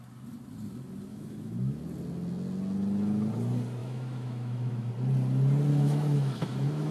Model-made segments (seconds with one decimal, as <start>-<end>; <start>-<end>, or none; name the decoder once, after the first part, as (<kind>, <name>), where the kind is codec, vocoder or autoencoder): 1.1-1.8 (autoencoder, DAC-VAE); 3.8-4.9; 5.7-6.9